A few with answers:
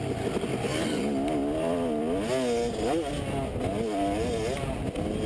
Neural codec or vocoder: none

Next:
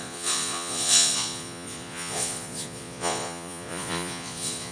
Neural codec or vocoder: vocoder, Vocos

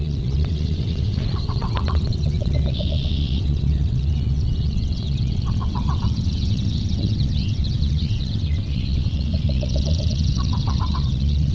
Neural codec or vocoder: vocoder, WaveNeXt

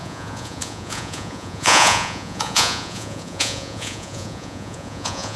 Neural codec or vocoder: vocoder, Vocos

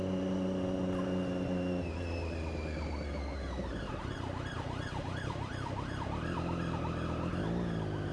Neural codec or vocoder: none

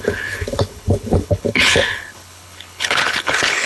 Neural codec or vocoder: codec, HILCodec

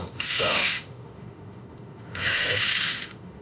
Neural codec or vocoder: autoencoder, DAC-VAE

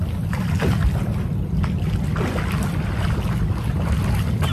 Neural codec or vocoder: none